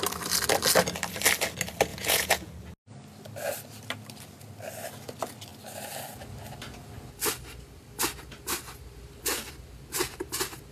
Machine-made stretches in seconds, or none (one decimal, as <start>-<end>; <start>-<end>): 1.9-2.5